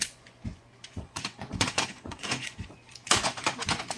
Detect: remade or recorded remade